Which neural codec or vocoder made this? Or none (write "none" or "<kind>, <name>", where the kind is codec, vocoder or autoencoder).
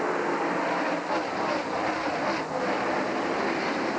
none